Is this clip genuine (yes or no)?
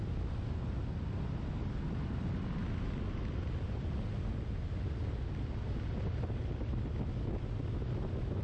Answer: yes